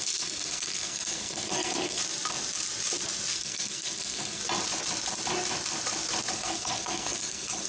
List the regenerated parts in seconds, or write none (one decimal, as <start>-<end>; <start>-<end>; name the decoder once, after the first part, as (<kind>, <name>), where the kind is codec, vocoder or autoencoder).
0.0-2.0 (codec, SNAC); 3.3-4.4; 6.3-7.7